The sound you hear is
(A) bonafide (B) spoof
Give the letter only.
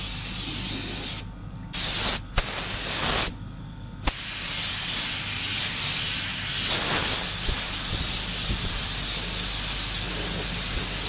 A